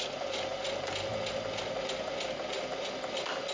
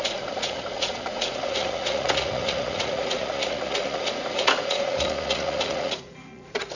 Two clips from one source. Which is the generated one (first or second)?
second